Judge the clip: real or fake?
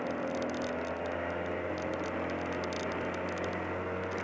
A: real